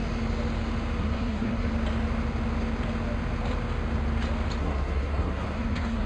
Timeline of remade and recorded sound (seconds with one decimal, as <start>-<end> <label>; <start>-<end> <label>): 0.0-1.0 recorded; 1.0-1.7 remade; 1.7-4.6 recorded; 4.6-6.1 remade